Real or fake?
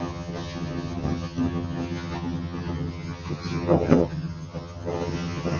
fake